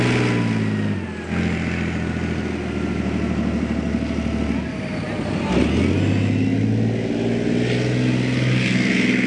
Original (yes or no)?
yes